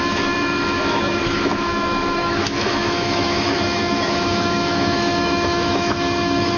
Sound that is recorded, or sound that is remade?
remade